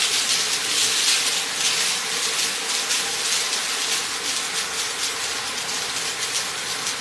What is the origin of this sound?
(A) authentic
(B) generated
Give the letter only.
A